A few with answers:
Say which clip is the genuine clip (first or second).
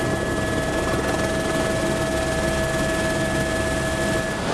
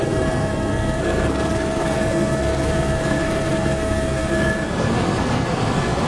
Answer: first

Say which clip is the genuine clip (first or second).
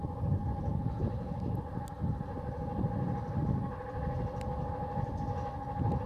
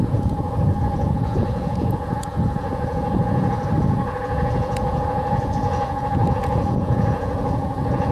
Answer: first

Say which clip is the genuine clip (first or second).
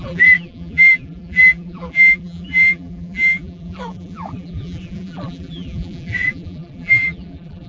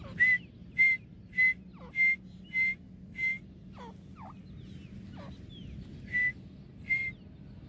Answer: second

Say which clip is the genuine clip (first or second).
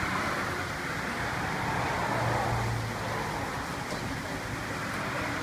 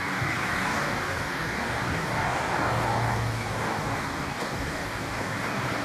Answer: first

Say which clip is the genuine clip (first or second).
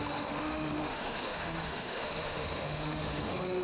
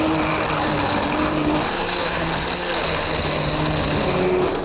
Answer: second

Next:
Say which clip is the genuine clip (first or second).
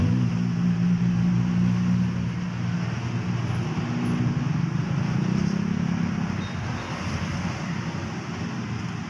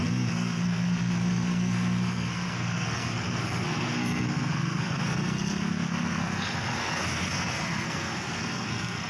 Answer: first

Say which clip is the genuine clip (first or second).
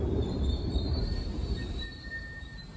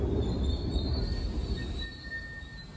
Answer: second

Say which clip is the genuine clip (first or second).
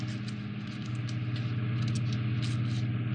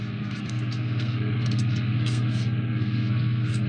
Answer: first